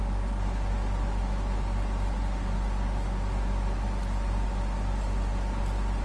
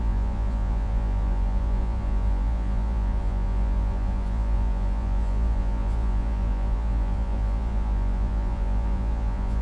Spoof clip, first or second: second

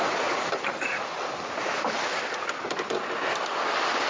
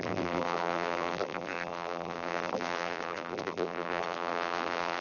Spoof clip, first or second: second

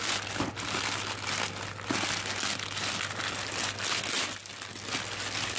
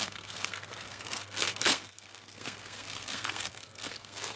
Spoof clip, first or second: second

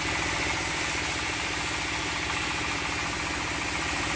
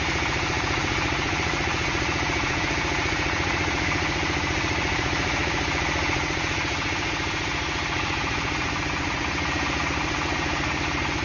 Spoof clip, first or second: second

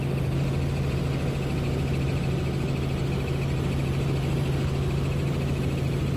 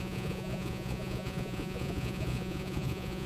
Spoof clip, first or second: second